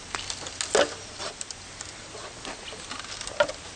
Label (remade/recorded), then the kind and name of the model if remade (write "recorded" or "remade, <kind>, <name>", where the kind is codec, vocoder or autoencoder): recorded